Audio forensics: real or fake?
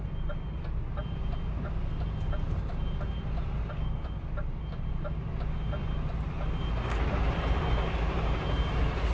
real